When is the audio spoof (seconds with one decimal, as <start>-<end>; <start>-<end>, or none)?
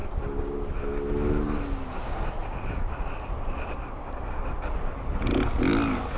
none